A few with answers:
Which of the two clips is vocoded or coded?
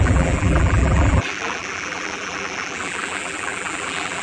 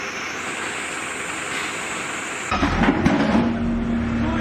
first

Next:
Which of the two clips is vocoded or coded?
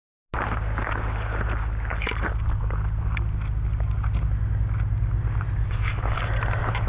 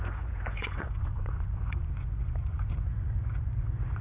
second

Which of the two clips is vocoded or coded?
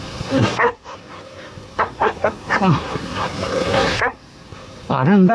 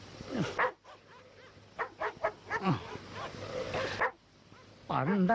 first